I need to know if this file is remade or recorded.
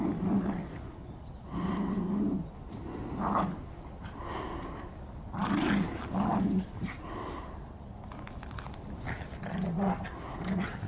recorded